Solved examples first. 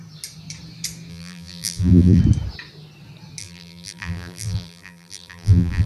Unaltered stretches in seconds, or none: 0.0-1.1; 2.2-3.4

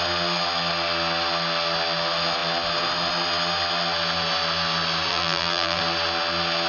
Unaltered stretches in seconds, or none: 0.0-5.1; 5.8-6.7

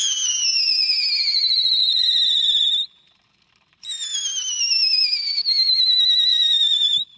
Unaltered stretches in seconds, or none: 0.0-6.3

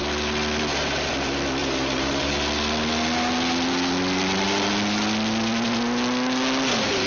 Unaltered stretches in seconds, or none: 0.0-1.6; 2.3-7.1

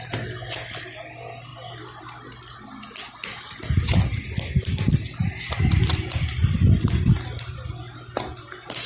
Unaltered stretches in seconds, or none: 0.0-8.9

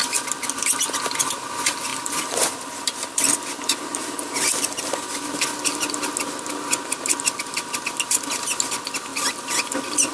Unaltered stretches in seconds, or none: 0.0-1.9; 3.4-3.9; 4.8-9.1; 9.7-10.1